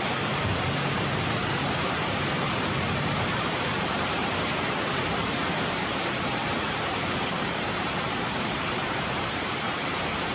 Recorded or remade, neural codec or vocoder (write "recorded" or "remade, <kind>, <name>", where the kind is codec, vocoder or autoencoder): remade, vocoder, BigVGAN v2